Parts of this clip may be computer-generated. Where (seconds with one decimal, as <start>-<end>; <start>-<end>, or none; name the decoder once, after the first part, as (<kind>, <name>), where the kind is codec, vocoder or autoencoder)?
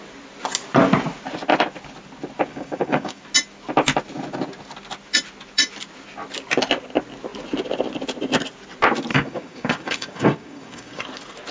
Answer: 2.5-3.2 (codec, DAC); 9.1-11.0